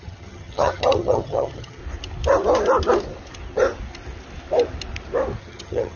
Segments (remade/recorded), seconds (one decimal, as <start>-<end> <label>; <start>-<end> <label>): 0.0-1.8 remade; 1.8-5.4 recorded; 5.4-6.0 remade

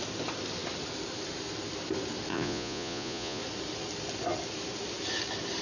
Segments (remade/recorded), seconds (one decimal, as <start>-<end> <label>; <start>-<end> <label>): 0.0-2.3 recorded; 2.3-3.4 remade; 3.4-5.6 recorded

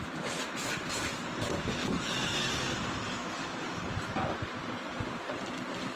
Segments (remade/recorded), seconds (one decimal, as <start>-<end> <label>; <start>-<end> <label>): 0.0-1.8 recorded; 1.8-2.5 remade; 2.5-3.2 recorded; 3.2-3.9 remade; 3.9-6.0 recorded

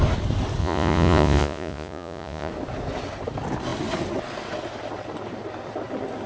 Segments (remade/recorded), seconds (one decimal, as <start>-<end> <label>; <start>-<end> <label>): 0.0-0.6 recorded; 0.6-2.5 remade; 2.5-6.3 recorded

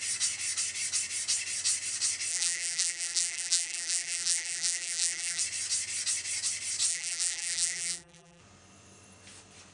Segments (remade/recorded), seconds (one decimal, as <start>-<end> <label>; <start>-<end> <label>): 0.0-2.3 recorded; 2.3-5.4 remade; 5.4-6.9 recorded; 6.9-8.4 remade; 8.4-9.7 recorded